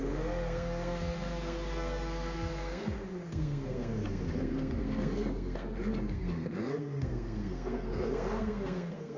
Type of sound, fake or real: fake